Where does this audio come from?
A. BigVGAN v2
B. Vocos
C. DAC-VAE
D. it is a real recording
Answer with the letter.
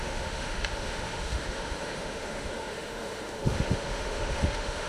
C